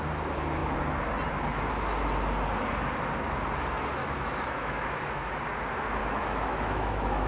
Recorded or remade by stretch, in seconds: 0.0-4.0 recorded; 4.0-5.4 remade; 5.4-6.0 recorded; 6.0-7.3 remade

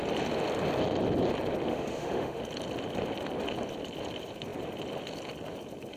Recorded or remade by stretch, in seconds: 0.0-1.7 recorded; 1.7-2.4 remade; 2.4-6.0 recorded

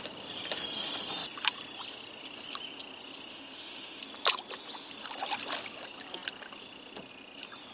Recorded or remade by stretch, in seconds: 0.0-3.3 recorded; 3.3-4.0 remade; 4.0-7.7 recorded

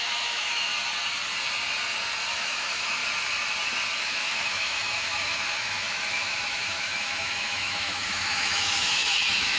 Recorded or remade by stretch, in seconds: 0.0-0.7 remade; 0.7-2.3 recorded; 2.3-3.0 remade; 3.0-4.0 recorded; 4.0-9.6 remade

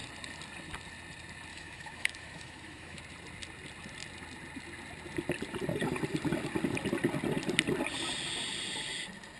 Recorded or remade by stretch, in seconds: 0.0-1.5 recorded; 1.5-3.0 remade; 3.0-9.4 recorded

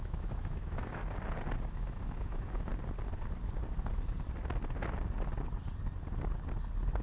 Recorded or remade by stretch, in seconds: 0.0-1.0 remade; 1.0-1.7 recorded; 1.7-2.7 remade; 2.7-7.0 recorded